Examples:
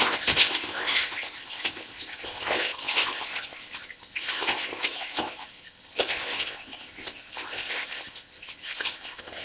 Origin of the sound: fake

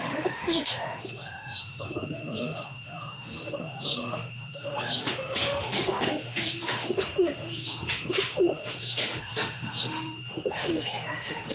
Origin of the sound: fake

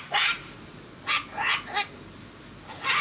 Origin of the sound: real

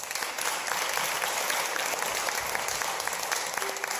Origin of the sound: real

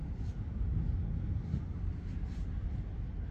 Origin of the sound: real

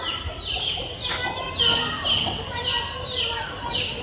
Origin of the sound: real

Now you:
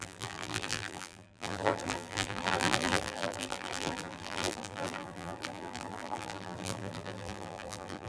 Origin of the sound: fake